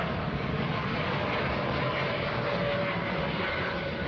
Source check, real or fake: fake